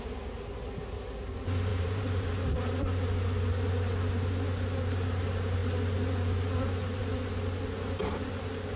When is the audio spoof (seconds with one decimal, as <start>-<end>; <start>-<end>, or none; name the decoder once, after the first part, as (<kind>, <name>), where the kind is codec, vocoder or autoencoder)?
1.7-2.3 (vocoder, BigVGAN v2)